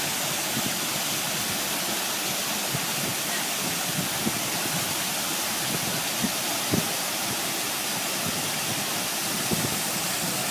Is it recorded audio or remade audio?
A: recorded